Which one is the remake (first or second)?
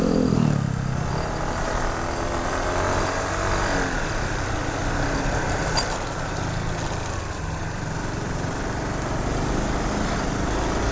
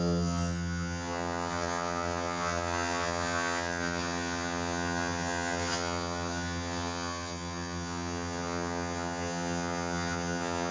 second